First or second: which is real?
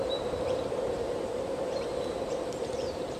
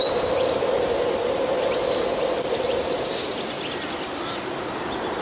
second